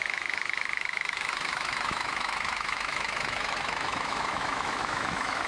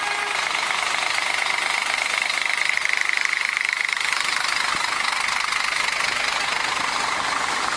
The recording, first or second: second